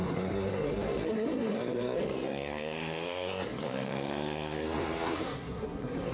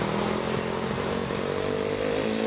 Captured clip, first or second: second